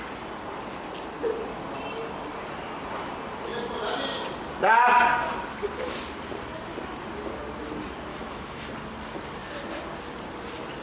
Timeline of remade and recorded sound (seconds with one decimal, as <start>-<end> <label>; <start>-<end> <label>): 0.0-8.1 recorded; 8.1-8.7 remade; 8.7-10.8 recorded